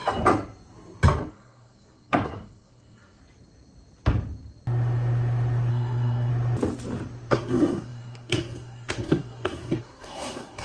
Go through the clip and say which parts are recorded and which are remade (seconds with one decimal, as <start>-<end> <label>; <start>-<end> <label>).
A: 0.0-1.3 recorded; 1.3-3.2 remade; 3.2-5.7 recorded; 5.7-6.3 remade; 6.3-7.3 recorded; 7.3-10.6 remade